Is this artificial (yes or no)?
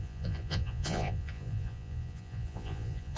yes